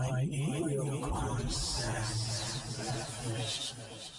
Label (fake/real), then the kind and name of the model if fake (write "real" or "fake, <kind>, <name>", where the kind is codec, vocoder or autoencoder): real